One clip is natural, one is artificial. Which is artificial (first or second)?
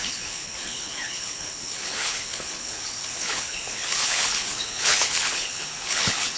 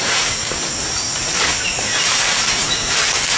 first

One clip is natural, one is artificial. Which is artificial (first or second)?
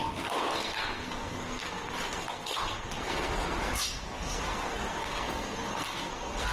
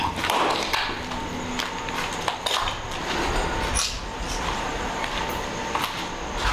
first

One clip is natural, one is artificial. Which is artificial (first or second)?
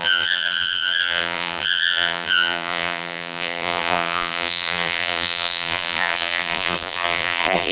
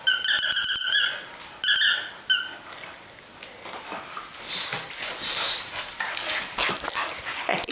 first